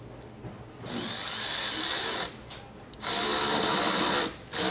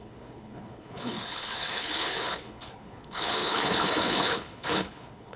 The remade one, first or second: second